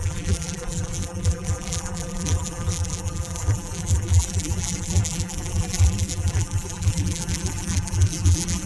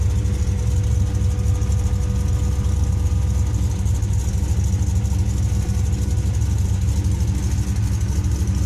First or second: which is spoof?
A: first